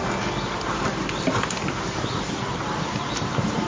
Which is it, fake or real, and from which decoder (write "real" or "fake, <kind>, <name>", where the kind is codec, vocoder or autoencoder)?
real